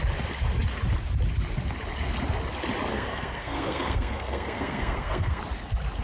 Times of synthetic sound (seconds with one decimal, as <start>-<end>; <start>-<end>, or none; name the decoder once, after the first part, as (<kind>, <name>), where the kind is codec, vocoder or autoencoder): 2.9-5.4 (codec, SNAC)